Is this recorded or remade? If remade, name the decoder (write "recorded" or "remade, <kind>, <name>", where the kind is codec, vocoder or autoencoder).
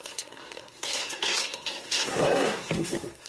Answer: remade, codec, SNAC